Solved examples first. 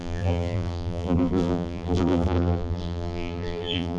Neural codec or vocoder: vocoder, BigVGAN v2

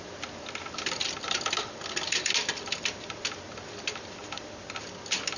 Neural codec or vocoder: none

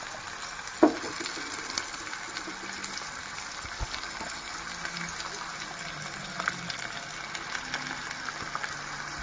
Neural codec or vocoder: none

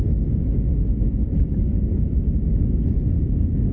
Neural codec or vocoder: none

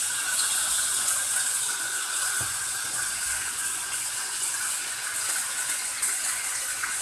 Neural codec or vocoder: vocoder, Vocos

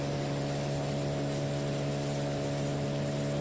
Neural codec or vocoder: none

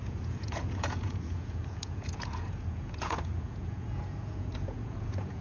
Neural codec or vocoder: vocoder, Vocos